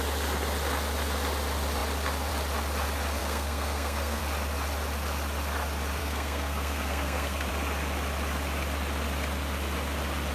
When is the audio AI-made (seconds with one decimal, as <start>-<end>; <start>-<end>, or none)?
3.2-4.2; 6.0-7.5